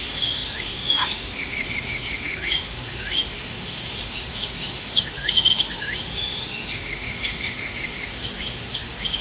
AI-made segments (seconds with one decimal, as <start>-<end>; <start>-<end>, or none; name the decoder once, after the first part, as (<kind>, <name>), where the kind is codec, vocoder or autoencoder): 0.0-9.2 (autoencoder, DAC-VAE)